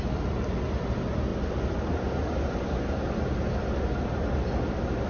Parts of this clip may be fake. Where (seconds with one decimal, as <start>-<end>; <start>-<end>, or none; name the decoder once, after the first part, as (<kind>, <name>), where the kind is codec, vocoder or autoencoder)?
none